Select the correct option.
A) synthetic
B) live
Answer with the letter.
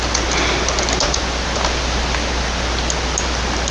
B